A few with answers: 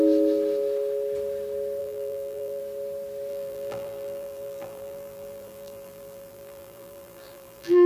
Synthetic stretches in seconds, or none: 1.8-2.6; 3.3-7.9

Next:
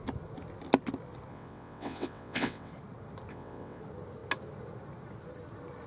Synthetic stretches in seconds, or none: 1.3-2.7; 3.3-3.8

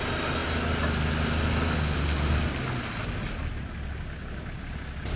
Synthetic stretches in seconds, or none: none

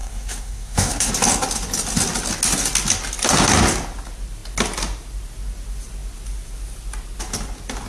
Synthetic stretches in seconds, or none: 0.0-1.1